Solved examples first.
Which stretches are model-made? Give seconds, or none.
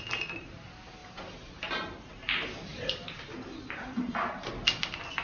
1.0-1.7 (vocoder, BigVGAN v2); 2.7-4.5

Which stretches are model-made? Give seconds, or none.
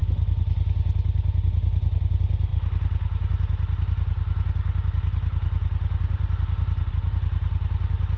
none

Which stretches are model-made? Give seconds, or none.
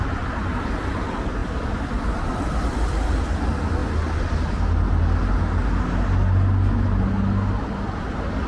none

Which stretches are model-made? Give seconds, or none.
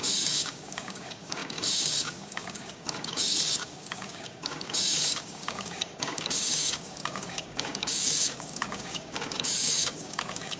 0.0-10.6 (codec, DAC)